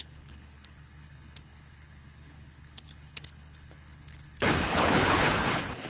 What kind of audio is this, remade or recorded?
remade